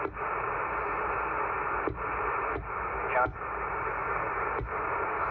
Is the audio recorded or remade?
recorded